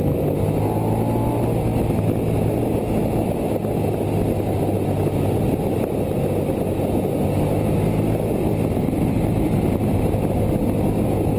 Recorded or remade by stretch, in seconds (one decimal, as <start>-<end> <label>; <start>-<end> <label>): 0.0-11.4 recorded